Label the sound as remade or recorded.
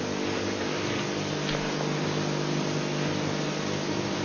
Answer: recorded